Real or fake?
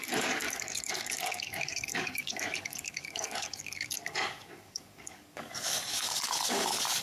fake